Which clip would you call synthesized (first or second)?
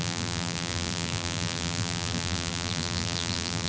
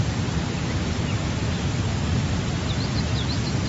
first